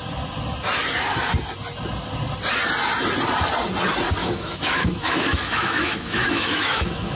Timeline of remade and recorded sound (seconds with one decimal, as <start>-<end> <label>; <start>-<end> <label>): 0.0-4.2 recorded; 4.2-7.2 remade